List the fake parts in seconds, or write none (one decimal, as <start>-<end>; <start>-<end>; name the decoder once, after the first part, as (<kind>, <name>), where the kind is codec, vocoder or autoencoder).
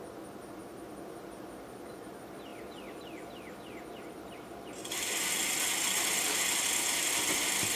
none